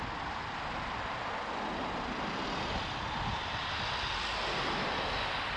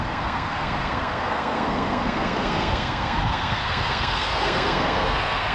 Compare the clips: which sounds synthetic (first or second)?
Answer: second